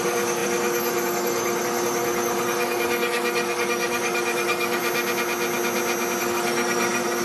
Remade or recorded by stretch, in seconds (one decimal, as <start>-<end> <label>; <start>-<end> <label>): 0.0-4.8 remade; 4.8-6.2 recorded; 6.2-7.2 remade